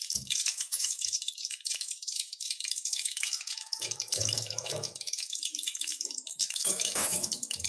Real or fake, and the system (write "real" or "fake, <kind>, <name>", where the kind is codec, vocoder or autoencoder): fake, autoencoder, DAC-VAE